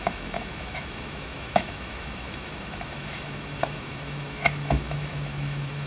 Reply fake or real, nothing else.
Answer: fake